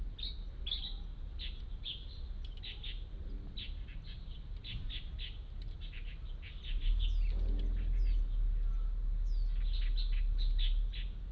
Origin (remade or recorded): recorded